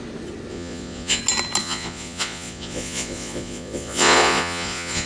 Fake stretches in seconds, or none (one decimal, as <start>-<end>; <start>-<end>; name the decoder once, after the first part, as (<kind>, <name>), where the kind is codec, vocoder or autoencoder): 0.5-1.2 (vocoder, Vocos); 1.6-5.1